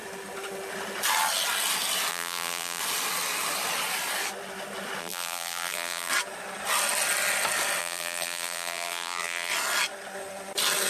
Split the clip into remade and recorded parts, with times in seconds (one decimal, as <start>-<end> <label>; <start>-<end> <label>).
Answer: 0.0-2.1 recorded; 2.1-2.8 remade; 2.8-5.0 recorded; 5.0-6.1 remade; 6.1-7.8 recorded; 7.8-9.5 remade; 9.5-10.9 recorded